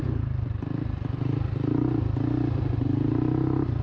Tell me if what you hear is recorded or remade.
recorded